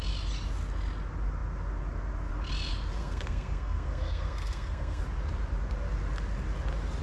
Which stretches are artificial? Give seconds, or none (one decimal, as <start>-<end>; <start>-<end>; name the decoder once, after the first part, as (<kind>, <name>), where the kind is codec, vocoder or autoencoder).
3.0-5.0 (codec, SNAC)